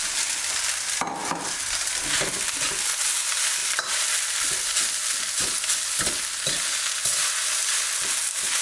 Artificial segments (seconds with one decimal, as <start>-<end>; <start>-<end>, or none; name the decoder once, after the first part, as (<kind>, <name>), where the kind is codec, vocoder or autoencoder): none